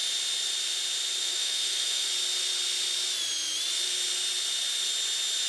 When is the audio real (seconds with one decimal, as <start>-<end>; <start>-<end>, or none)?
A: 0.0-1.2; 2.1-5.5

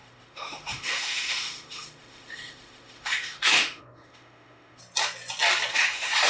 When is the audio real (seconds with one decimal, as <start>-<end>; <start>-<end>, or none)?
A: 4.8-5.7

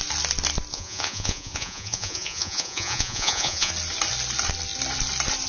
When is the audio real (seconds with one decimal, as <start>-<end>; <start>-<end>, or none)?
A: 0.0-0.7; 3.7-5.5

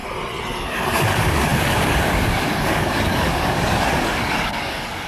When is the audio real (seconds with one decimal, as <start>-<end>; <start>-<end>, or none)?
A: 0.0-0.6

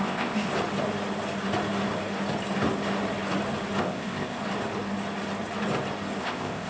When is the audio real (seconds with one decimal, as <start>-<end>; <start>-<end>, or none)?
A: 0.5-3.8; 4.4-6.2

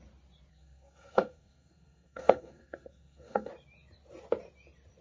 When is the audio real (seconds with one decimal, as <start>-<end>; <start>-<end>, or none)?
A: 0.0-0.5; 3.5-5.0